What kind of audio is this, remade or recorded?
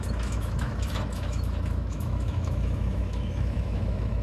remade